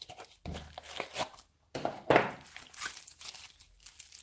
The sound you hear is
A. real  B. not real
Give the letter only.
A